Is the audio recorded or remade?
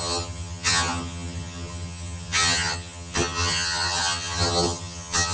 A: remade